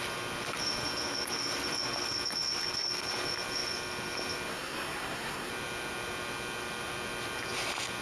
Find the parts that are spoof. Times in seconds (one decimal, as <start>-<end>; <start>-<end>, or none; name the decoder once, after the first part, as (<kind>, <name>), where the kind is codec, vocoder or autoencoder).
4.5-5.5 (codec, SNAC)